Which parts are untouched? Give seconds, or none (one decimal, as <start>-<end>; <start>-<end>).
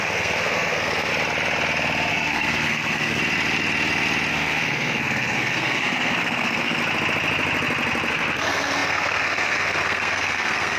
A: 1.1-2.1; 3.2-4.3; 6.8-8.1